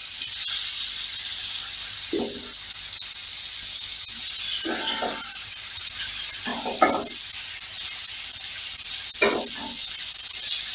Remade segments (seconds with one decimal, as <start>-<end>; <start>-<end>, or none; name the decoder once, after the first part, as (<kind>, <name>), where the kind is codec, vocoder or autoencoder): none